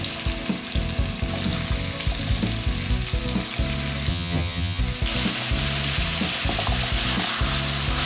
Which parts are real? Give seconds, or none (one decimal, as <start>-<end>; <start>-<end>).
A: 0.0-4.1; 4.8-8.1